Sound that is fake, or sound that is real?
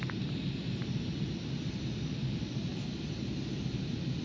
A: real